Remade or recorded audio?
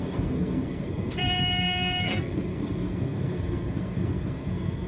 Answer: remade